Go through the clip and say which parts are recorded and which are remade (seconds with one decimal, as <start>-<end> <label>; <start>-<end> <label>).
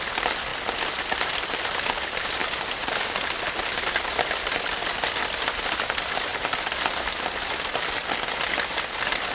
0.0-6.3 recorded; 6.3-7.9 remade; 7.9-9.3 recorded